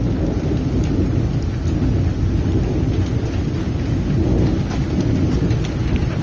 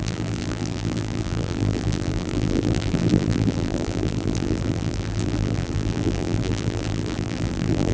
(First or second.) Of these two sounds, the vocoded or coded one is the second